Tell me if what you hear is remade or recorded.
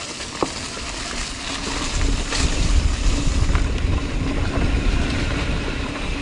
recorded